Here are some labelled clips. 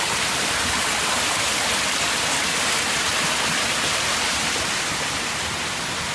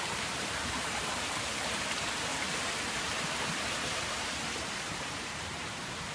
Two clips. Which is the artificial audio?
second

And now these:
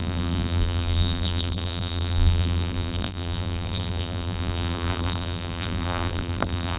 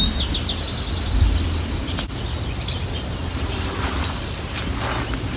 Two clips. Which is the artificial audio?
first